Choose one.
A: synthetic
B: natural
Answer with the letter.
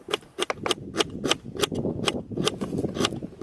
B